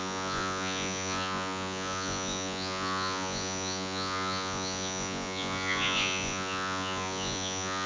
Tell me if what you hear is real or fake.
fake